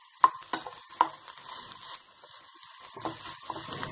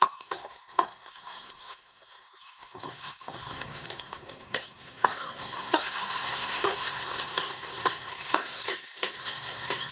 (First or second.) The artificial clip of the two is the second